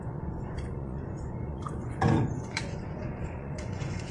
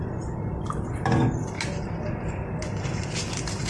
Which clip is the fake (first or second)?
first